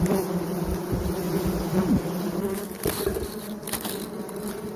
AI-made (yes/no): yes